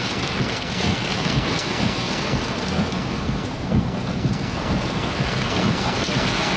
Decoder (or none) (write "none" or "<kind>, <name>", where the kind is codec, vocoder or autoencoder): codec, SNAC